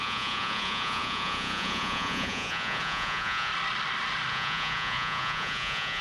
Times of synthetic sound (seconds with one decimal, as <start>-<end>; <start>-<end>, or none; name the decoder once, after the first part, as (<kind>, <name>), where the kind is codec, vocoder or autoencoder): 0.0-3.5 (vocoder, Vocos); 4.3-6.0